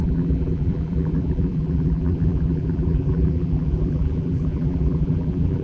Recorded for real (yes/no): no